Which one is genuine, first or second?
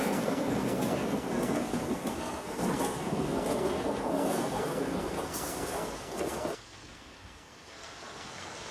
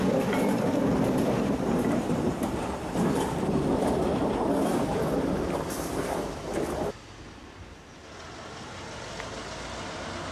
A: second